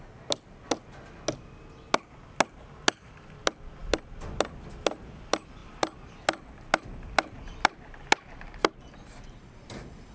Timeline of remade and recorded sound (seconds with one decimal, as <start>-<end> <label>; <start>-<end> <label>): 0.0-10.1 recorded